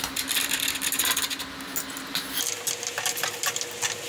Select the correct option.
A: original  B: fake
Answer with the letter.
A